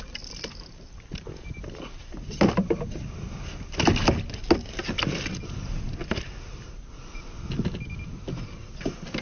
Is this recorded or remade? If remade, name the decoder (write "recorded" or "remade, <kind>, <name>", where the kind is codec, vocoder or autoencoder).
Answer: recorded